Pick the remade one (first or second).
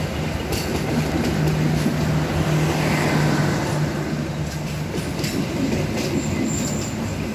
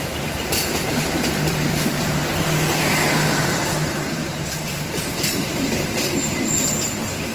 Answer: second